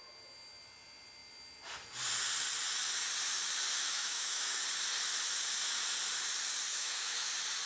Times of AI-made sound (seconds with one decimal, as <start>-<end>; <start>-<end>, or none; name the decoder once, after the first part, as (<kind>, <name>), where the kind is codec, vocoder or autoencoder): 3.7-4.6 (autoencoder, DAC-VAE); 6.7-7.3